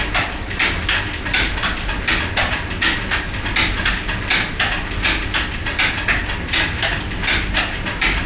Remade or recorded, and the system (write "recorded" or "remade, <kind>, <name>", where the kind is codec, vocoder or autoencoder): recorded